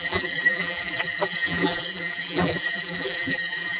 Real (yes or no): no